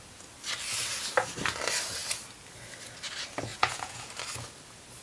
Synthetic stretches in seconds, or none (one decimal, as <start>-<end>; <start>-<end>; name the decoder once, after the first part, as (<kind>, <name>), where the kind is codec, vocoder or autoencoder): 3.5-4.1 (vocoder, Vocos)